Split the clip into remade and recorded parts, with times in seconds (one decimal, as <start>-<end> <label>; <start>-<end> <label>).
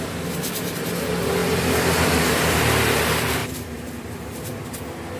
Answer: 0.0-1.4 recorded; 1.4-2.6 remade; 2.6-3.4 recorded; 3.4-4.6 remade; 4.6-5.2 recorded